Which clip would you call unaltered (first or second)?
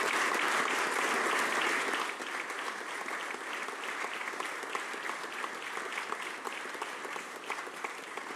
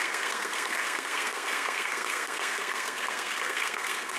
first